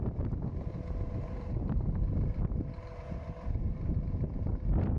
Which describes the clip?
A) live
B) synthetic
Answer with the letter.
B